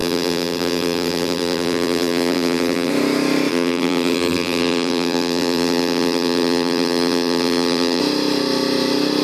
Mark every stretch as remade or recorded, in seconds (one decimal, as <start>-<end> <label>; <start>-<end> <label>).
0.0-2.9 remade; 2.9-3.5 recorded; 3.5-8.0 remade; 8.0-9.2 recorded